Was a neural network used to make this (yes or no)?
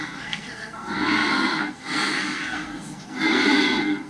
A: yes